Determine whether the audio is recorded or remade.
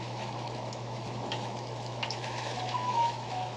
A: remade